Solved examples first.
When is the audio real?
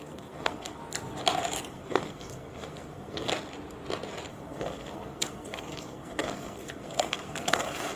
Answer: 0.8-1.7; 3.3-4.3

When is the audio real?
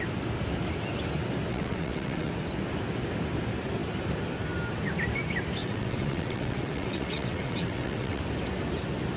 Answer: 0.0-1.5; 2.3-5.6; 8.2-9.2